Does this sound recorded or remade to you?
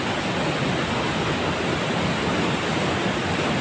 recorded